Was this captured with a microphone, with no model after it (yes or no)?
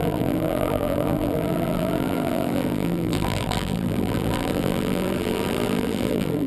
no